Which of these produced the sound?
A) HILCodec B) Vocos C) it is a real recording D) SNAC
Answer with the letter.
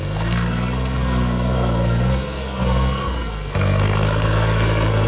D